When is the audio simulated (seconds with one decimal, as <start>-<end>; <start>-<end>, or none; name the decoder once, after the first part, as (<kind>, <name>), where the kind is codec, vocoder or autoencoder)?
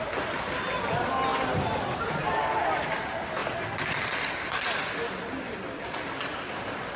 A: none